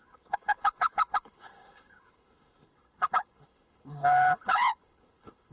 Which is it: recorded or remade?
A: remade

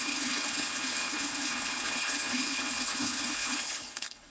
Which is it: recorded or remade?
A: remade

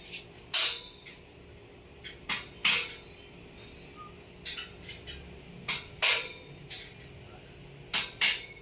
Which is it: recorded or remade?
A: recorded